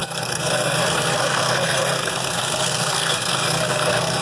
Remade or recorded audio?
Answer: remade